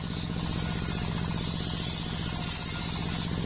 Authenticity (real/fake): real